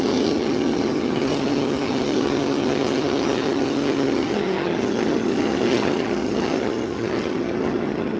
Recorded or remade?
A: remade